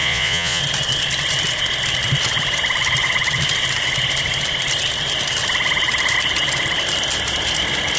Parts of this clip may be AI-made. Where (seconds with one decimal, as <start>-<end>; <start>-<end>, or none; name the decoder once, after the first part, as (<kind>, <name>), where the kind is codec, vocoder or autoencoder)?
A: 0.0-0.6 (vocoder, Vocos)